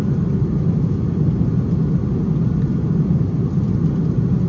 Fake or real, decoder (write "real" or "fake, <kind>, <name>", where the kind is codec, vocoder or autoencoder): real